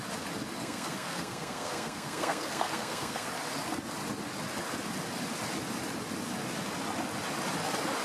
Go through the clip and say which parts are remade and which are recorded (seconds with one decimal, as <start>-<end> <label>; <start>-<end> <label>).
0.0-0.6 recorded; 0.6-3.3 remade; 3.3-8.0 recorded